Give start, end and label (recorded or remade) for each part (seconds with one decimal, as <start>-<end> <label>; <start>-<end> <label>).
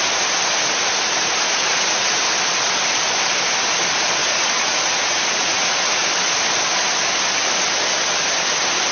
0.0-1.7 recorded; 1.7-2.2 remade; 2.2-4.2 recorded; 4.2-6.1 remade; 6.1-8.9 recorded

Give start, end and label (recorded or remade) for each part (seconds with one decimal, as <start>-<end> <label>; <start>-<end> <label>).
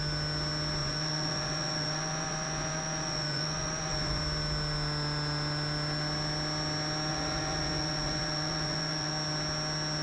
0.0-0.8 recorded; 0.8-4.2 remade; 4.2-7.1 recorded; 7.1-9.1 remade; 9.1-10.0 recorded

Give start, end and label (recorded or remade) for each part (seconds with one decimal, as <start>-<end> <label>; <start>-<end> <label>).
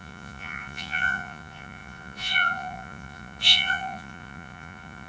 0.0-5.1 remade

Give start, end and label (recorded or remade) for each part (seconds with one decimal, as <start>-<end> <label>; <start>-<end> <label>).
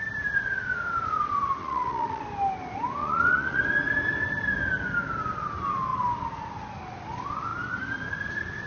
0.0-1.6 recorded; 1.6-2.2 remade; 2.2-3.0 recorded; 3.0-3.6 remade; 3.6-8.7 recorded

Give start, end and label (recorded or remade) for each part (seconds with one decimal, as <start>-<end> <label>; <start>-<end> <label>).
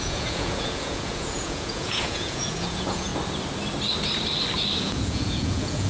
0.0-3.1 remade; 3.1-4.8 recorded; 4.8-5.9 remade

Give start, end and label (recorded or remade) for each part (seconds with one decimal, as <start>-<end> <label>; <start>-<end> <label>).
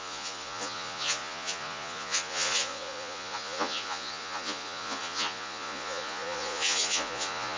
0.0-7.6 remade